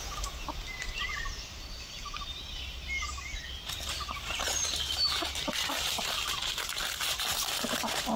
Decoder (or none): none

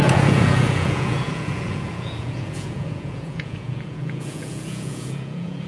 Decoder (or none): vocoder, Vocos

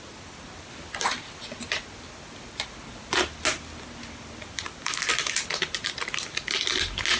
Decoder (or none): none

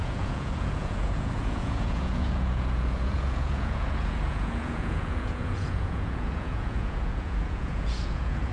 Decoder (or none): vocoder, Vocos